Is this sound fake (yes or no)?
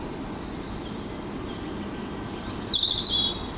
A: no